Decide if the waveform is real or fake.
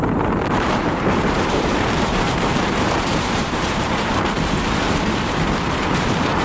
fake